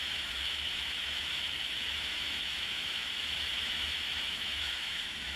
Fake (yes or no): yes